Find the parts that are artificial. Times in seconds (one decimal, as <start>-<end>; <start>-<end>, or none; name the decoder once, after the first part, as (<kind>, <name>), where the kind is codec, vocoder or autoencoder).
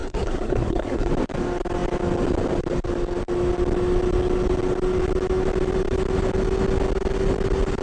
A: 0.0-1.1 (codec, SNAC)